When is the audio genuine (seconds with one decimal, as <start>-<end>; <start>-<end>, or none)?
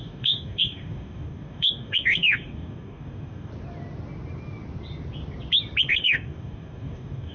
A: 3.5-5.9